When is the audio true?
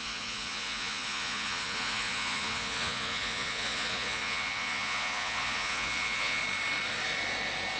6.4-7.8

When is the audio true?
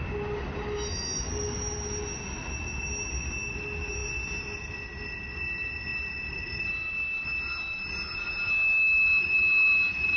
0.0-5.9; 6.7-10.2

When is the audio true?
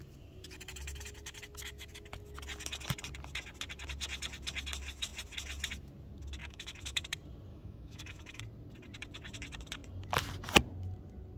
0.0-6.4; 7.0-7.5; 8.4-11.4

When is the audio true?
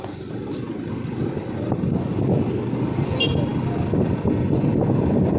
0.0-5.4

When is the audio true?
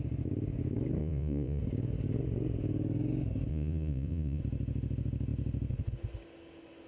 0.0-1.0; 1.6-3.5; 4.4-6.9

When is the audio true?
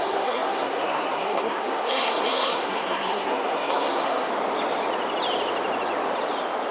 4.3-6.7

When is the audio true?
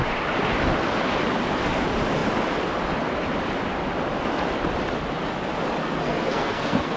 0.0-5.8